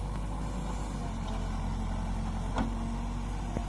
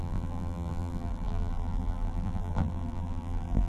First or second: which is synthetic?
second